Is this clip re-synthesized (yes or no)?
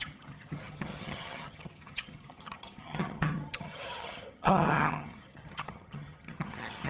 yes